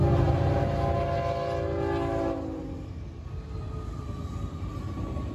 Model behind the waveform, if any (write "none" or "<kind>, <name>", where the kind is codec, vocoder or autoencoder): none